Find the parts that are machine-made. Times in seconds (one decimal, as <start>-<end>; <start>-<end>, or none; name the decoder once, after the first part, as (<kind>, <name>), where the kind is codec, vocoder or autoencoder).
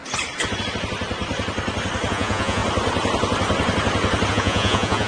2.1-2.6 (vocoder, Vocos); 4.3-5.1